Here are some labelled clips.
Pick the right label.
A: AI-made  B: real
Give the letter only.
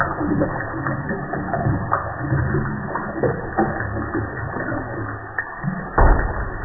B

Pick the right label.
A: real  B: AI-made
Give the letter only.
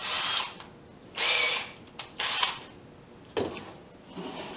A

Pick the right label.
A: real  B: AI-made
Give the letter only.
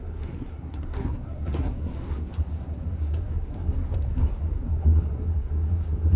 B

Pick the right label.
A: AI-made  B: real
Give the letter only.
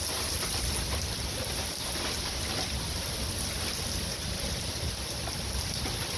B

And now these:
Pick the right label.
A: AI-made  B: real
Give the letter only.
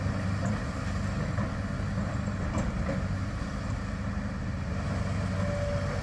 B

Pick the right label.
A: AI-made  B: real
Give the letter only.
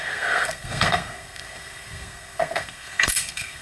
A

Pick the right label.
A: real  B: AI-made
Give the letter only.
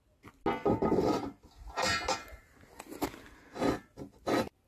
A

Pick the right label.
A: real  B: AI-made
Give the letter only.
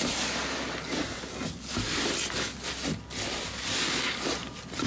A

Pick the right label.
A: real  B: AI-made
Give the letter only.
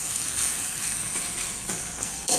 B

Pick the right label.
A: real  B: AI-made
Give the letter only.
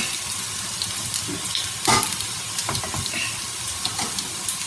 A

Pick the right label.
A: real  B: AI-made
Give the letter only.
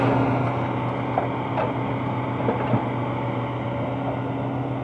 A